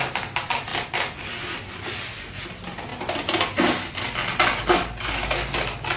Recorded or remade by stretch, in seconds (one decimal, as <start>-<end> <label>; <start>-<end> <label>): 0.0-6.0 recorded